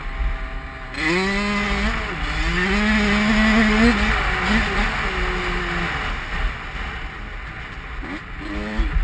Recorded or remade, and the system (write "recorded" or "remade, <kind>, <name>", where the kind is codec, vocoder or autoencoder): recorded